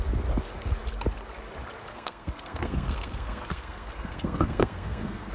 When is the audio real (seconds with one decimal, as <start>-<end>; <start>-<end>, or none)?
0.0-1.9